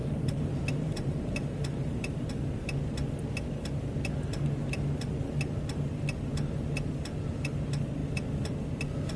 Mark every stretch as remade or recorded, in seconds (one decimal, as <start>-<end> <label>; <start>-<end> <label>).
0.0-2.3 remade; 2.3-9.2 recorded